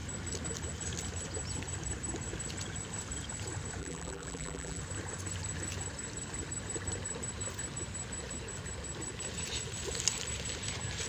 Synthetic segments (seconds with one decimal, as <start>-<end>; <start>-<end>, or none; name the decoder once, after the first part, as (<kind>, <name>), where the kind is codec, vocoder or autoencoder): 3.8-4.8 (vocoder, BigVGAN v2)

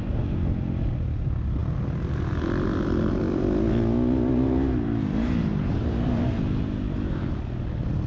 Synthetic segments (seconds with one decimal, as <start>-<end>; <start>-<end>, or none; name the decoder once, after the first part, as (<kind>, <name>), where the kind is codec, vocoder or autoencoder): 5.5-6.1 (vocoder, BigVGAN v2)

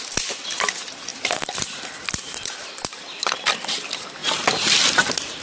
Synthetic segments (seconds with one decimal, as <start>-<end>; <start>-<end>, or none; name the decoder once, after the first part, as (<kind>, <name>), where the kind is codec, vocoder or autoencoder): 0.0-5.4 (vocoder, BigVGAN v2)

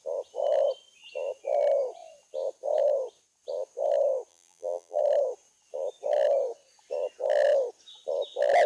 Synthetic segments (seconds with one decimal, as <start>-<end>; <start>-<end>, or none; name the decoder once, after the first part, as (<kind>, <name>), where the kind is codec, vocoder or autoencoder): 4.3-5.0 (vocoder, BigVGAN v2)

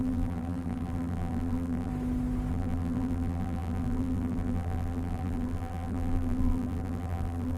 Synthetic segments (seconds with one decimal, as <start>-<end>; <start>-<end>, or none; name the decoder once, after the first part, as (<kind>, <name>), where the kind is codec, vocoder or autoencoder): 0.0-1.9 (vocoder, BigVGAN v2); 2.5-7.6

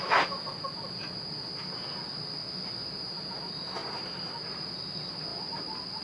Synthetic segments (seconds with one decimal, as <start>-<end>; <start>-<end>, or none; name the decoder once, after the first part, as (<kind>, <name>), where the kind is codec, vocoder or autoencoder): 3.8-4.7 (vocoder, BigVGAN v2)